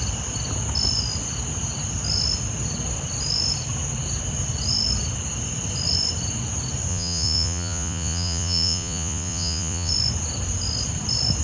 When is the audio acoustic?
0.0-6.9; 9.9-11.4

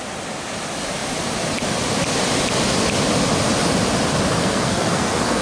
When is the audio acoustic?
0.0-4.4

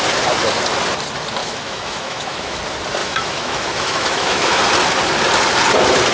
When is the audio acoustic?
0.0-1.4; 2.6-3.0; 4.6-6.1